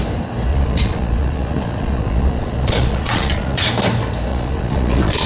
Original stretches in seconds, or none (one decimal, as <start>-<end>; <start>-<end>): 0.0-0.5; 3.7-4.3